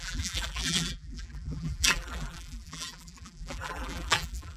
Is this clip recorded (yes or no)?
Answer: no